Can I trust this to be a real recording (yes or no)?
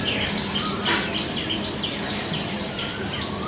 yes